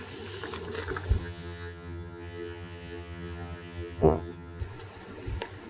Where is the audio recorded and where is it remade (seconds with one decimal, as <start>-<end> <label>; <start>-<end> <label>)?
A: 0.0-1.2 recorded; 1.2-4.6 remade; 4.6-5.7 recorded